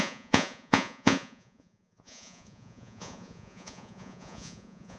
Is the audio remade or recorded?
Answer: remade